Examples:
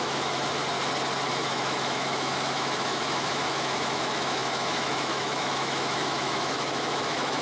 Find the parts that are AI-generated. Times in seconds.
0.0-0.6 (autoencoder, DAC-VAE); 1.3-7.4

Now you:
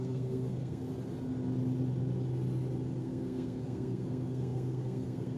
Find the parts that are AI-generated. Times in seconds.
0.0-0.8 (codec, SNAC); 3.0-5.4

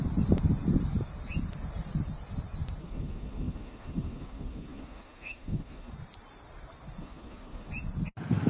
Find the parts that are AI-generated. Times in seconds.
2.8-5.9 (autoencoder, DAC-VAE); 7.0-7.7

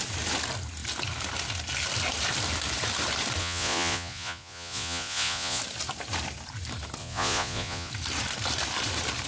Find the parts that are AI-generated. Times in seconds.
3.4-5.6 (vocoder, Vocos); 7.0-7.9